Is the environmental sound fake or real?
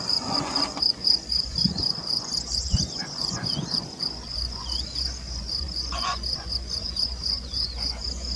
fake